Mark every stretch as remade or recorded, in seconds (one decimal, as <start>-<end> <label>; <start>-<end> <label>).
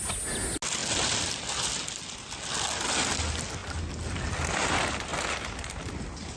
0.0-6.4 recorded